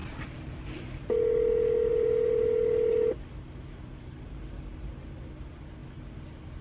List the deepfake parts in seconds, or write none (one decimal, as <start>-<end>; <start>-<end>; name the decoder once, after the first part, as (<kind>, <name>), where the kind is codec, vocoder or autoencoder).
0.0-1.1 (vocoder, BigVGAN v2); 1.9-4.3